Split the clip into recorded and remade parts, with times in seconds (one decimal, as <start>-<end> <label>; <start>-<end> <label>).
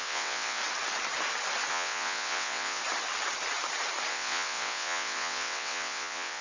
0.0-0.6 remade; 0.6-1.7 recorded; 1.7-2.8 remade; 2.8-4.1 recorded; 4.1-6.4 remade